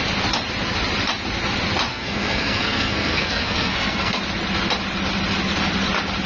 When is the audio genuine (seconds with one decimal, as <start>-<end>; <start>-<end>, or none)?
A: 0.0-1.9; 4.2-6.3